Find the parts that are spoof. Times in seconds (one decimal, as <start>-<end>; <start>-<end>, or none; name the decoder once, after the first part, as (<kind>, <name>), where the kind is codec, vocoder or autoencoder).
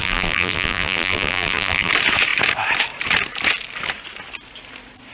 0.0-1.9 (vocoder, BigVGAN v2)